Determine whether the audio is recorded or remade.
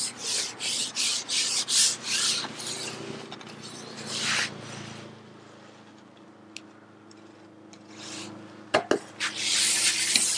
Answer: recorded